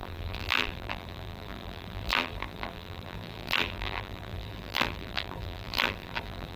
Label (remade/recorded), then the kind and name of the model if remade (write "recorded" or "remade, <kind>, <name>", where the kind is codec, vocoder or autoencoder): remade, vocoder, BigVGAN v2